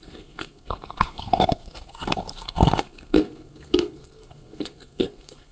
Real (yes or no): no